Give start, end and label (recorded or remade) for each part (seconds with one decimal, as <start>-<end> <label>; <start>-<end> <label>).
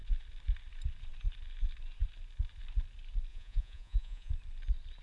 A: 0.0-3.3 recorded; 3.3-4.3 remade; 4.3-5.0 recorded